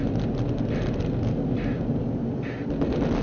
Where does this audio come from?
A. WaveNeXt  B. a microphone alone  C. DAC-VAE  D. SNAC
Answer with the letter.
B